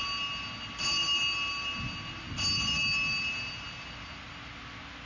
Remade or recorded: recorded